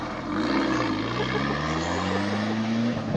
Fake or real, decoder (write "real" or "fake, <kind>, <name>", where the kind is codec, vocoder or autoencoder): real